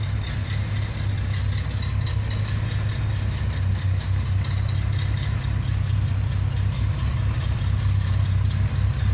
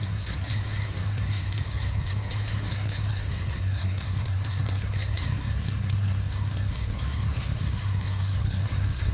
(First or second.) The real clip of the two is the first